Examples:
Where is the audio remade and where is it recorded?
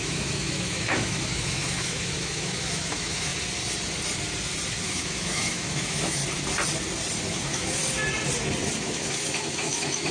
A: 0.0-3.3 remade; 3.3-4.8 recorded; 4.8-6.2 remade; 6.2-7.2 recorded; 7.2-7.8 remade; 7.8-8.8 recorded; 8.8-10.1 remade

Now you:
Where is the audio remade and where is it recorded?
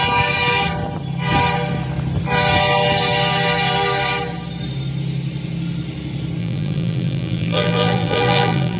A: 0.0-6.4 recorded; 6.4-8.8 remade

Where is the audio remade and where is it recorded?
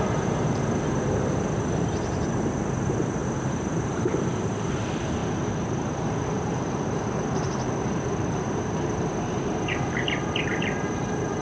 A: 0.0-11.4 remade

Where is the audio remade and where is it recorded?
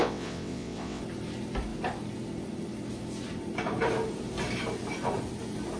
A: 0.0-1.0 remade; 1.0-5.8 recorded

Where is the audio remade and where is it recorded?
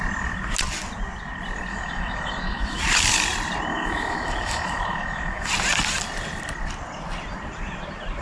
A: 0.0-1.7 recorded; 1.7-2.8 remade; 2.8-3.7 recorded; 3.7-5.5 remade; 5.5-8.2 recorded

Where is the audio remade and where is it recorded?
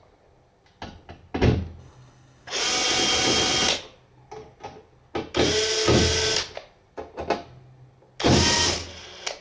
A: 0.0-1.8 recorded; 1.8-2.6 remade; 2.6-9.4 recorded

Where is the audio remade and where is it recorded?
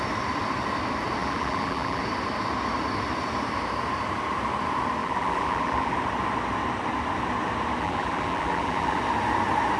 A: 0.0-1.2 recorded; 1.2-2.0 remade; 2.0-5.0 recorded; 5.0-5.9 remade; 5.9-7.8 recorded; 7.8-9.0 remade; 9.0-9.8 recorded